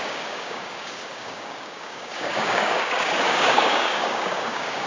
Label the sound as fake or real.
fake